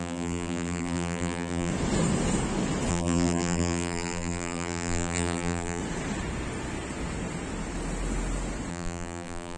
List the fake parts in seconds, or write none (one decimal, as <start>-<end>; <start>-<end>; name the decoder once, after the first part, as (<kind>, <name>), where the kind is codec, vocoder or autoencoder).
0.0-1.7 (vocoder, BigVGAN v2); 2.9-5.8; 8.7-9.6